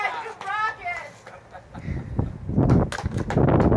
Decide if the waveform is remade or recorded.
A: recorded